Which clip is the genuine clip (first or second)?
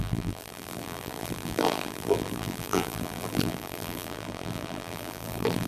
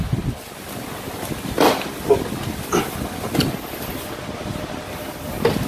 second